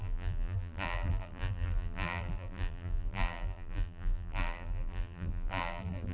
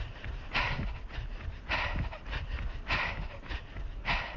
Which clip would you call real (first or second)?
second